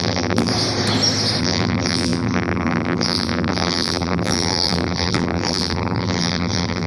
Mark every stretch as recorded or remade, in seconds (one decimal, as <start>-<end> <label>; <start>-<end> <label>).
0.0-0.5 remade; 0.5-1.4 recorded; 1.4-6.9 remade